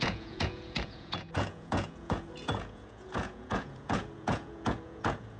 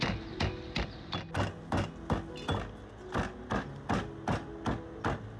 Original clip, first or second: second